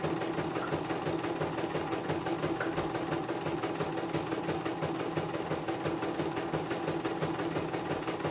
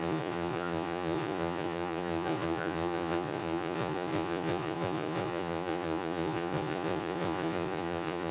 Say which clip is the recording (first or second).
first